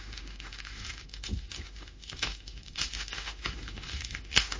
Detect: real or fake fake